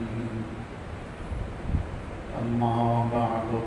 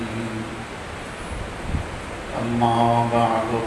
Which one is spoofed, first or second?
first